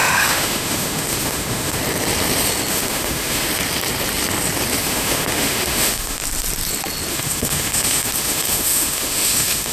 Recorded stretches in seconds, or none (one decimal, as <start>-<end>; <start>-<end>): 1.8-2.7; 3.5-4.8; 6.2-7.1